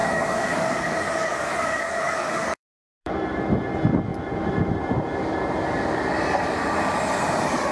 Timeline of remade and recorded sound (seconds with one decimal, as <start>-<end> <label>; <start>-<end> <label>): 0.0-3.1 remade; 3.1-7.7 recorded